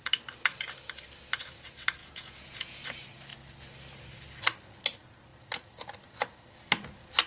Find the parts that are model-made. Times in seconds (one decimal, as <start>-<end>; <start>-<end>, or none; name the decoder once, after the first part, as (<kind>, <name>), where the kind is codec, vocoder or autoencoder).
2.0-2.8 (vocoder, Vocos)